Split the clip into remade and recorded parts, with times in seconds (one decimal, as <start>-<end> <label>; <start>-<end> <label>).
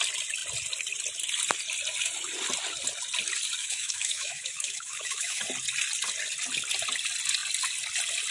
0.0-3.6 recorded; 3.6-5.4 remade; 5.4-8.3 recorded